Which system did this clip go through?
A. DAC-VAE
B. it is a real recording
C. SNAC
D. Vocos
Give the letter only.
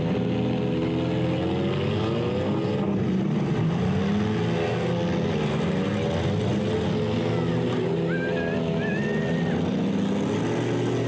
B